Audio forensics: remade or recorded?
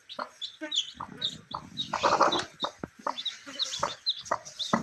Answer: recorded